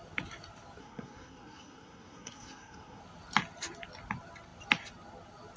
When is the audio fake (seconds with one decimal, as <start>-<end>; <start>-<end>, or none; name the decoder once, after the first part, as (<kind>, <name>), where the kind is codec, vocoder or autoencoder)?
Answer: 0.8-3.0 (codec, SNAC)